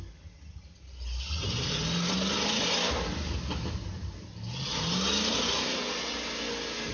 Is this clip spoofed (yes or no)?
no